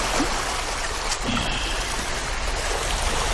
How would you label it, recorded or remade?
recorded